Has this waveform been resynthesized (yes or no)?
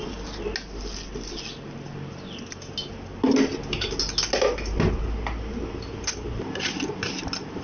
no